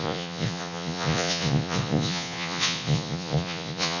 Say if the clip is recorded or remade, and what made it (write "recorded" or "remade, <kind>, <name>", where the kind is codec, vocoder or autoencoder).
remade, vocoder, Vocos